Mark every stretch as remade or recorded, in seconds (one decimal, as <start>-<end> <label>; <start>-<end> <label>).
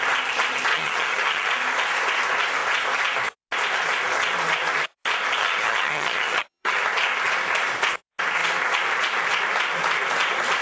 0.0-0.7 recorded; 0.7-1.5 remade; 1.5-5.4 recorded; 5.4-6.8 remade; 6.8-10.6 recorded